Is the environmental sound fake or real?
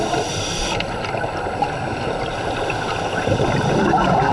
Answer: real